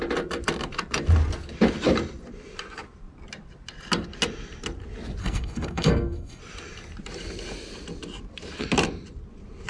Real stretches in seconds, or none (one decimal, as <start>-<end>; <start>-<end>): 0.0-5.2; 6.4-9.7